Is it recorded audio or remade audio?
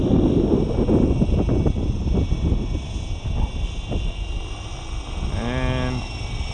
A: recorded